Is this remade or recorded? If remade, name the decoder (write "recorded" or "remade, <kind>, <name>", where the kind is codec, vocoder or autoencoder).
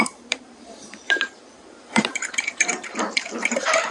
remade, vocoder, BigVGAN v2